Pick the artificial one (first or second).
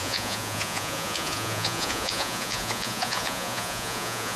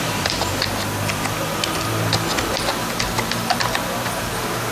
first